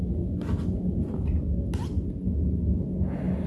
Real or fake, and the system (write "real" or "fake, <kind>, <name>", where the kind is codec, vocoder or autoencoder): real